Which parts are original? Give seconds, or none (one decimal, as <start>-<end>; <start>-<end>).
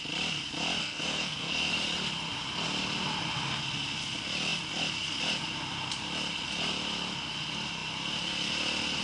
0.0-0.8; 1.7-9.0